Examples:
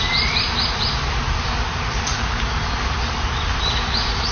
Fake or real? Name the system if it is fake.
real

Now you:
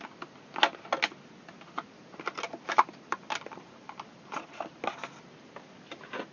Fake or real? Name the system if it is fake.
real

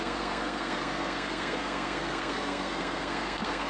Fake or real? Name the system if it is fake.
fake, codec, SNAC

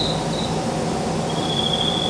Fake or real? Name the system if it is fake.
real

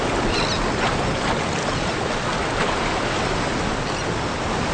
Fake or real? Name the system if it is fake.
real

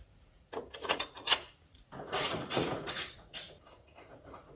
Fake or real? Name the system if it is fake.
fake, vocoder, Vocos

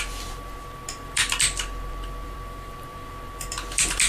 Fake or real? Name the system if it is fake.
fake, vocoder, BigVGAN v2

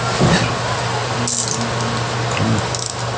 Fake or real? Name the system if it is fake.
real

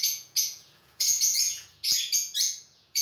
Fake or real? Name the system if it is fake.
fake, vocoder, Vocos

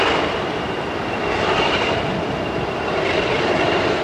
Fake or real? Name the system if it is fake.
fake, vocoder, BigVGAN v2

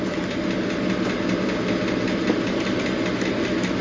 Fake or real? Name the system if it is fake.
real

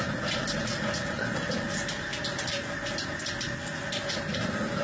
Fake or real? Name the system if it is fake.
real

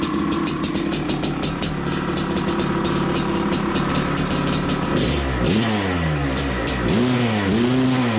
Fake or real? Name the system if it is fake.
real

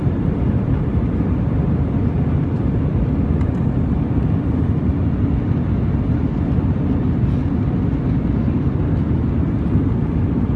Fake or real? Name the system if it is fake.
real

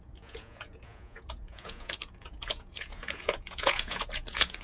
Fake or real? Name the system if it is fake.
fake, vocoder, Vocos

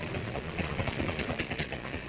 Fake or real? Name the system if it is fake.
fake, vocoder, Vocos